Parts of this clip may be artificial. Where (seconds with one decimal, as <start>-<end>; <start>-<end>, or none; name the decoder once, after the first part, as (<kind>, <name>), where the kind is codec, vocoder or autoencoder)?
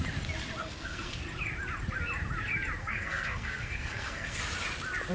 0.6-1.2 (codec, SNAC); 2.8-4.4